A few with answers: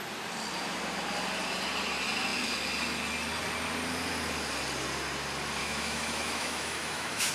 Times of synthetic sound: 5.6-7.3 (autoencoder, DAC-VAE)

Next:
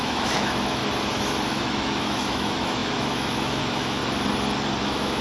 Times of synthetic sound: 0.0-0.8 (autoencoder, DAC-VAE); 1.5-4.0; 4.8-5.2

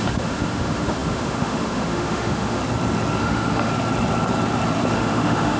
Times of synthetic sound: 0.0-2.6 (autoencoder, DAC-VAE); 3.2-3.7; 4.9-5.6

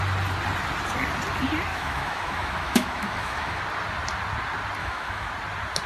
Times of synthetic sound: 1.7-3.6 (autoencoder, DAC-VAE); 4.8-5.3